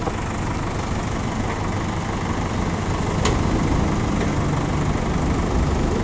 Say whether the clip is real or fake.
real